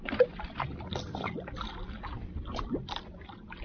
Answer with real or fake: real